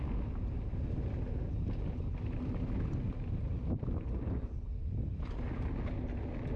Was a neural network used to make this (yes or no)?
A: no